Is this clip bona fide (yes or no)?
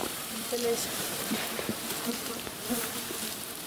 no